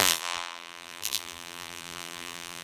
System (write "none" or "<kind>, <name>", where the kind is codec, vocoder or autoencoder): vocoder, BigVGAN v2